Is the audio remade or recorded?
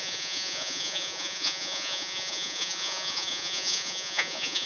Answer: remade